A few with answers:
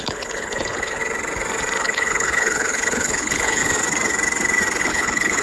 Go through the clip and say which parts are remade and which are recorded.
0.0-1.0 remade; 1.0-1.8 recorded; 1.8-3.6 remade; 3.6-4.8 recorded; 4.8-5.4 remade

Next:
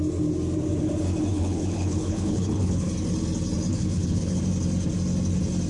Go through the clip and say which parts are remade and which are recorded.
0.0-1.3 recorded; 1.3-2.9 remade; 2.9-3.7 recorded; 3.7-4.4 remade; 4.4-5.7 recorded

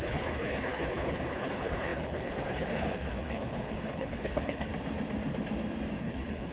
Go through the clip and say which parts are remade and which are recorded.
0.0-4.7 remade; 4.7-6.0 recorded; 6.0-6.5 remade

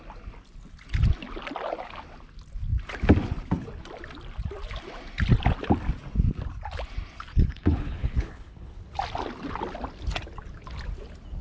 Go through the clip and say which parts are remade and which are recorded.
0.0-7.3 recorded; 7.3-8.8 remade; 8.8-11.4 recorded

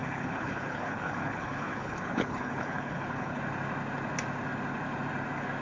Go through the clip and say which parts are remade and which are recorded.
0.0-3.4 remade; 3.4-5.6 recorded

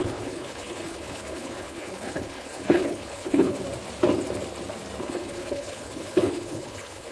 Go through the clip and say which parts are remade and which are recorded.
0.0-3.6 remade; 3.6-5.0 recorded; 5.0-7.1 remade